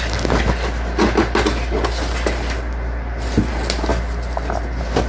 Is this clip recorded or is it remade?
recorded